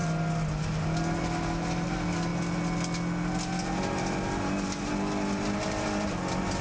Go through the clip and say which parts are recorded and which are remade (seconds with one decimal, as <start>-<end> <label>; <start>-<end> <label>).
0.0-6.6 recorded